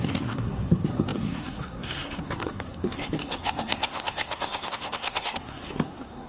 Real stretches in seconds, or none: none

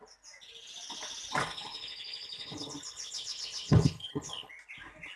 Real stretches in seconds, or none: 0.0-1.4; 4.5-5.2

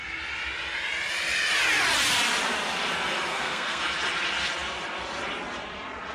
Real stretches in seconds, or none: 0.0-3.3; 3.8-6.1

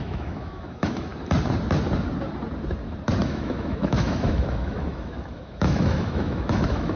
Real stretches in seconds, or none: 1.1-3.2

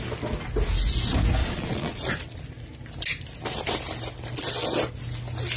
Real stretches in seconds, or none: 0.0-1.4; 2.1-5.6

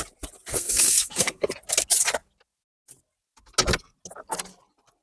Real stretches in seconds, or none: 0.0-0.5; 1.5-5.0

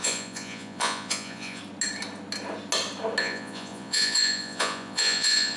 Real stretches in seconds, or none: 1.6-3.2